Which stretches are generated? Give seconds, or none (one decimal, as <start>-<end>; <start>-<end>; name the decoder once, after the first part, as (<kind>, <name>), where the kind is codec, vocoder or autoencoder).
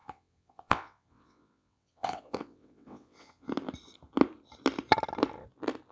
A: 0.0-3.5 (vocoder, WaveNeXt)